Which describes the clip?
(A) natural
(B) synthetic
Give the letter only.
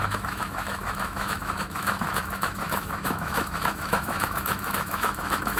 B